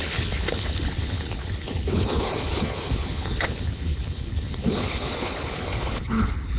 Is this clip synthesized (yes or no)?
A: yes